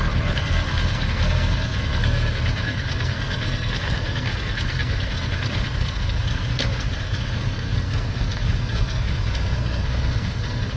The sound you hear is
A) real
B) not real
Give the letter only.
B